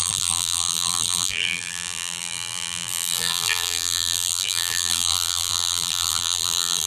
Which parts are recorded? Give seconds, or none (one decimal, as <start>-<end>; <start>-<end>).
none